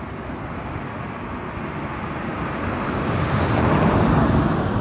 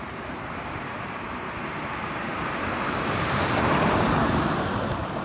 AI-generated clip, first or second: second